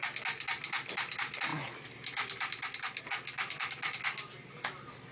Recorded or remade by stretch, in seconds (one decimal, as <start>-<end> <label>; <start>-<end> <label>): 0.0-5.1 recorded